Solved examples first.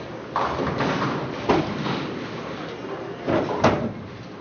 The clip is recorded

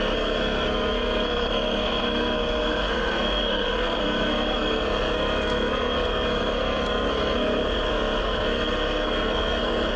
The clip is remade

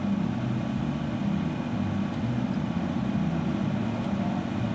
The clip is recorded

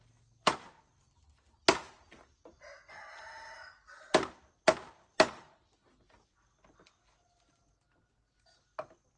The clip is recorded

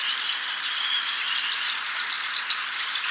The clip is remade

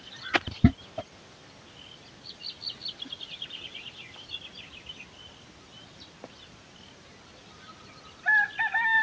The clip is recorded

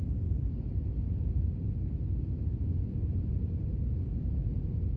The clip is recorded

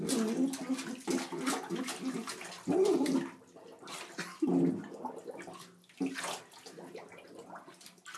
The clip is recorded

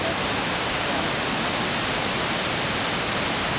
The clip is recorded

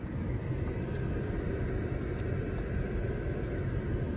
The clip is recorded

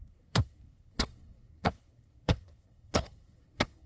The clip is remade